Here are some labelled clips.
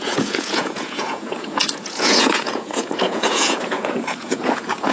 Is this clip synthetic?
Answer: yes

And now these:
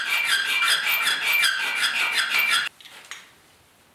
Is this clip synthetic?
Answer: no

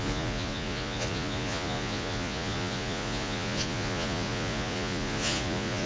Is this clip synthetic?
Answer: yes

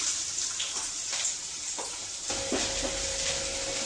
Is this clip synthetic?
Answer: no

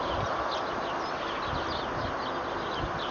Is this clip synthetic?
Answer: no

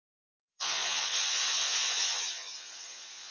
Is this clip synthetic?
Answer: yes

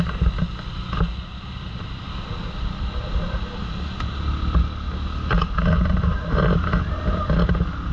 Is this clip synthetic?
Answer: no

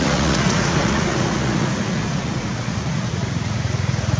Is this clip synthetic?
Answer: yes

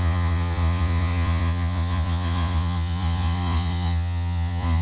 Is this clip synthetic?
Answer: yes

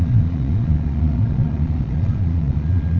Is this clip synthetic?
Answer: yes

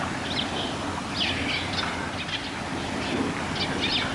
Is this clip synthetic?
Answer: no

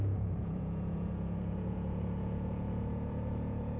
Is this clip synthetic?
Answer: yes